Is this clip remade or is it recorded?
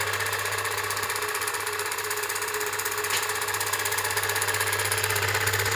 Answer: recorded